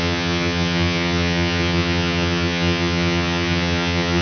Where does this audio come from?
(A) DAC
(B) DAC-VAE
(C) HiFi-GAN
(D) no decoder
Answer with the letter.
C